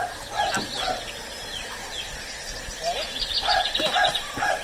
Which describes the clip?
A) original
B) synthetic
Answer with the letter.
A